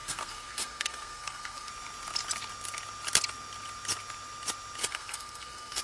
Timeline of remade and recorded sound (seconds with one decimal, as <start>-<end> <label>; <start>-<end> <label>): 0.0-1.7 remade; 1.7-4.8 recorded; 4.8-5.8 remade